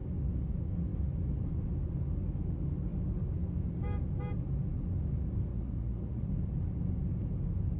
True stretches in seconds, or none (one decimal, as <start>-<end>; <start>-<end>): 0.0-5.5; 6.3-7.8